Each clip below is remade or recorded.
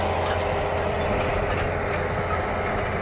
recorded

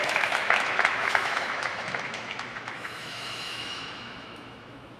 remade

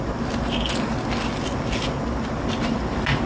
recorded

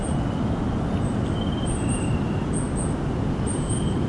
recorded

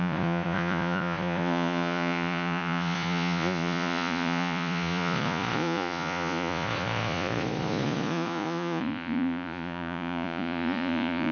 remade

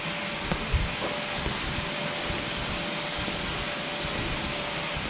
recorded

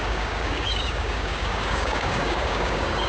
remade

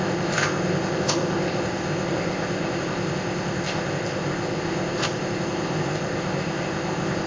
remade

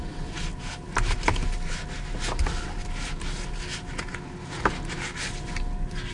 recorded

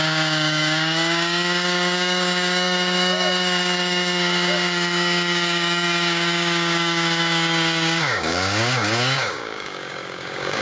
remade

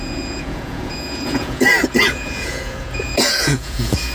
remade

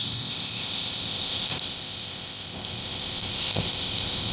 remade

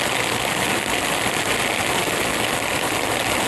recorded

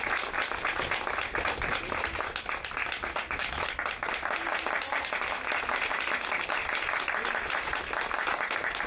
recorded